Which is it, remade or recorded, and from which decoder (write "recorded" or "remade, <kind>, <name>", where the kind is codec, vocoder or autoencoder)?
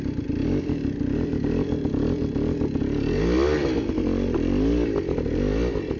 recorded